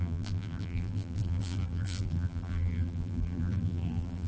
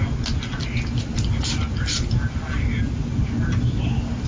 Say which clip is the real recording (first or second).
second